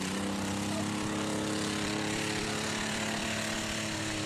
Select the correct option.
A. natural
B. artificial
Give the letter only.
B